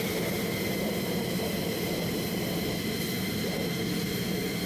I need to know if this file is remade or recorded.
recorded